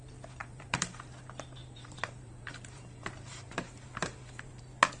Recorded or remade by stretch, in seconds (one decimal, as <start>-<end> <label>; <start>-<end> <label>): 0.0-0.4 recorded; 0.4-1.1 remade; 1.1-1.6 recorded; 1.6-4.6 remade; 4.6-5.0 recorded